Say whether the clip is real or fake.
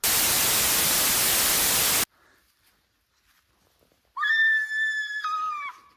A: real